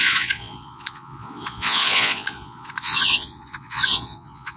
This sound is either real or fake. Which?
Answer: fake